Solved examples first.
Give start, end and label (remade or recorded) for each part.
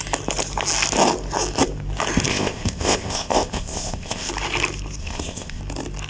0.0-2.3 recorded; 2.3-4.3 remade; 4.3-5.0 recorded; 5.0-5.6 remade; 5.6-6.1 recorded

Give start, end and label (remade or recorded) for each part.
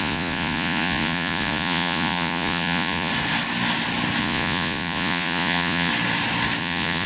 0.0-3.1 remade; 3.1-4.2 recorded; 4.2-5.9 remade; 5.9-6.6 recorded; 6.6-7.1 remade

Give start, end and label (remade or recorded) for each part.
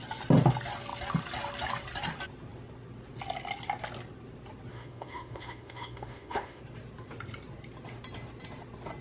0.0-4.7 recorded; 4.7-6.6 remade; 6.6-9.0 recorded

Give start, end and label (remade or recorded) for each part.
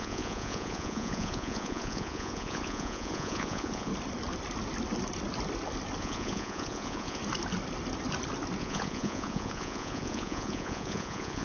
0.0-3.9 remade; 3.9-6.0 recorded; 6.0-7.2 remade; 7.2-8.6 recorded; 8.6-11.4 remade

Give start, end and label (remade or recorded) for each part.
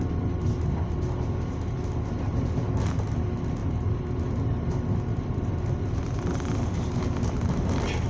0.0-8.1 recorded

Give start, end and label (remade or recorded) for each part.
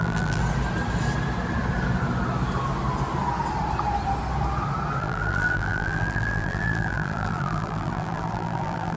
0.0-0.4 remade; 0.4-5.0 recorded; 5.0-9.0 remade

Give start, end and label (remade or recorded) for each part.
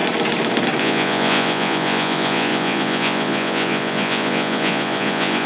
0.0-0.8 recorded; 0.8-5.5 remade